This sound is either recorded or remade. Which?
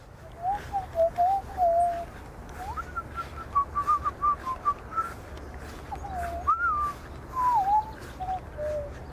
recorded